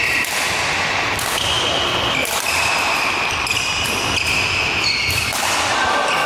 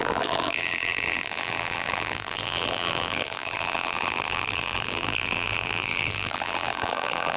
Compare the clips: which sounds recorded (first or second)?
first